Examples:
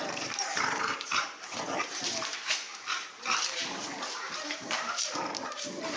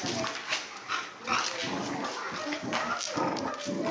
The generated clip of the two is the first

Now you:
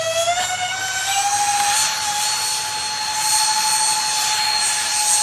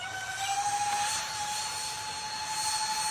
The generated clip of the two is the second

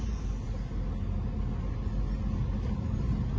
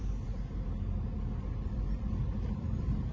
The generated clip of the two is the second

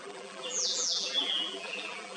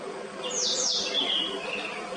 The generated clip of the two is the first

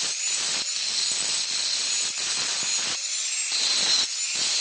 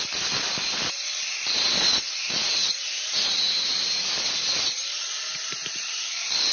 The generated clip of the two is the second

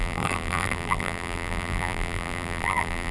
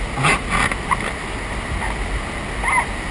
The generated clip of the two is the first